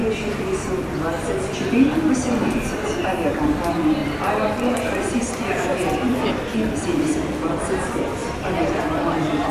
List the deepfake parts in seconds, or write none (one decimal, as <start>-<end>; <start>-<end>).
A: 3.3-4.0; 4.7-9.5

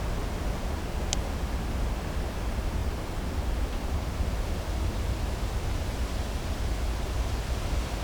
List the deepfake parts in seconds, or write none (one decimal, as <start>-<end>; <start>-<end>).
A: none

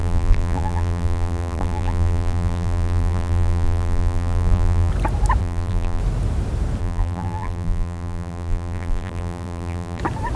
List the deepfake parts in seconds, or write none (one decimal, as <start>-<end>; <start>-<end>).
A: 0.0-4.9; 5.4-6.0; 6.8-10.0

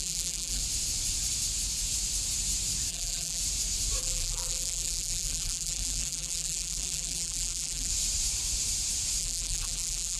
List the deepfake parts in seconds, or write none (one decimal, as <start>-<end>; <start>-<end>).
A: 0.0-0.6; 2.9-3.4; 4.0-7.9; 9.2-10.2

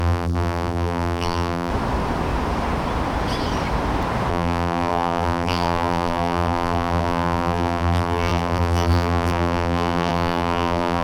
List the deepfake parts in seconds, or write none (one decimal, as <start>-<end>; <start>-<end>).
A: 0.0-1.7; 4.3-11.0